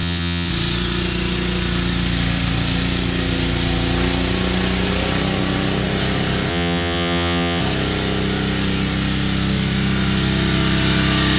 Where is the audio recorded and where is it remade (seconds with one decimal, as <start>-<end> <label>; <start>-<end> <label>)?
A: 0.0-0.5 remade; 0.5-6.5 recorded; 6.5-7.6 remade; 7.6-11.4 recorded